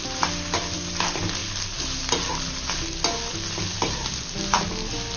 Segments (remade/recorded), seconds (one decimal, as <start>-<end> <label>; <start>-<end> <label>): 0.0-5.2 recorded